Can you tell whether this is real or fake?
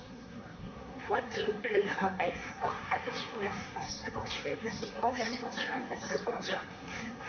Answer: fake